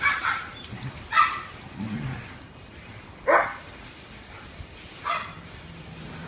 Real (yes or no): yes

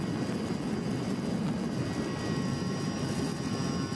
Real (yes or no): yes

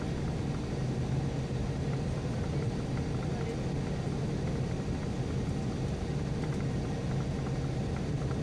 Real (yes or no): yes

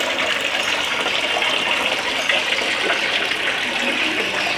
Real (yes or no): yes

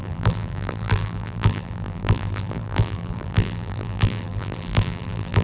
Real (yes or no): no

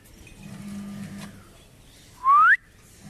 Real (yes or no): yes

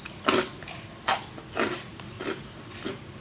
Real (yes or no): yes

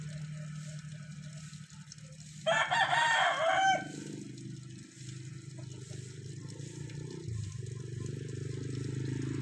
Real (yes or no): yes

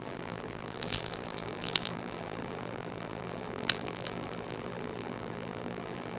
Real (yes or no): no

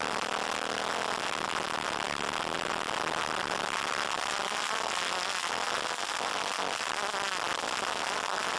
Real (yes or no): yes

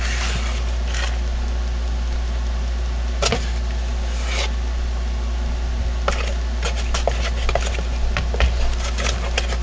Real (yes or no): yes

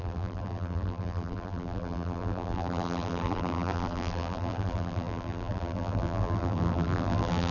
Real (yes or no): no